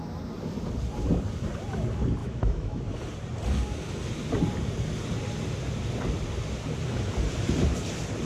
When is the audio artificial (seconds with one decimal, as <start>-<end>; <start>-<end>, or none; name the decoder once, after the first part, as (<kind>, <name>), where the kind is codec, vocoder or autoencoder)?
2.2-2.8 (autoencoder, DAC-VAE)